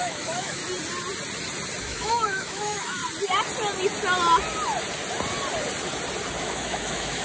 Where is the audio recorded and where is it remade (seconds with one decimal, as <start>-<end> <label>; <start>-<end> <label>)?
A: 0.0-0.6 remade; 0.6-1.8 recorded; 1.8-3.0 remade; 3.0-6.4 recorded; 6.4-7.2 remade